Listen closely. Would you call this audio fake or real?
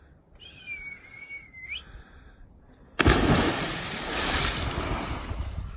real